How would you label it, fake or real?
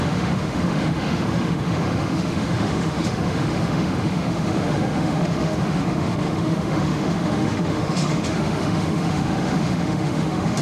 fake